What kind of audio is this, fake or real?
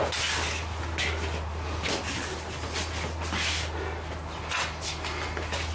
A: real